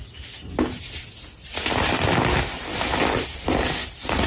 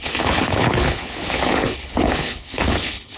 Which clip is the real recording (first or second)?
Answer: first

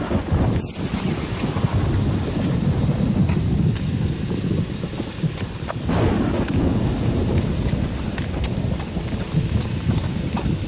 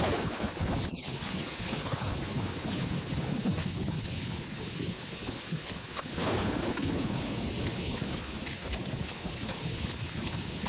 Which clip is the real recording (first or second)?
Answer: first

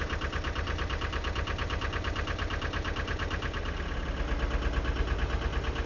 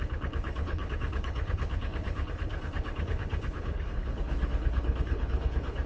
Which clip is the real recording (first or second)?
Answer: first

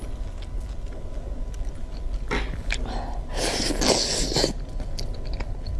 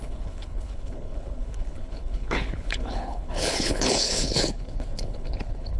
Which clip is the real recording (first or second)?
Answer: first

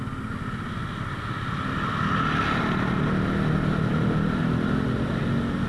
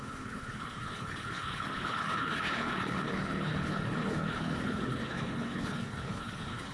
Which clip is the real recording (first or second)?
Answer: first